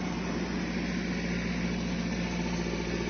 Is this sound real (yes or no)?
yes